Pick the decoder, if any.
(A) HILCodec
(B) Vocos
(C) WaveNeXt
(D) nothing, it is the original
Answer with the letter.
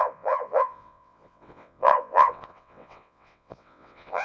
C